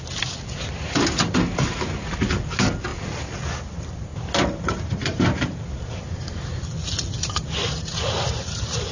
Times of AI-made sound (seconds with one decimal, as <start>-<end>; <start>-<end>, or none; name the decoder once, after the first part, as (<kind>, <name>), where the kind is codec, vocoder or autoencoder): none